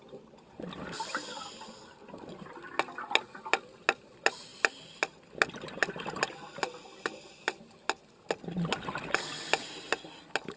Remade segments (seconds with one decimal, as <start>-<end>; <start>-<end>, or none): none